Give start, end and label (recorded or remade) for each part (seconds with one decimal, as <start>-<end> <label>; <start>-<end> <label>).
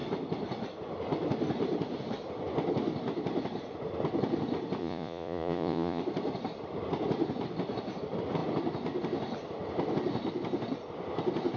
0.0-4.8 recorded; 4.8-6.0 remade; 6.0-11.6 recorded